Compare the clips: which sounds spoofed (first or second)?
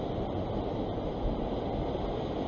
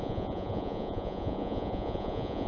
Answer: second